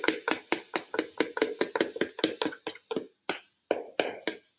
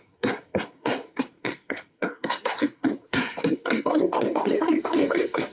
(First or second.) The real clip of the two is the first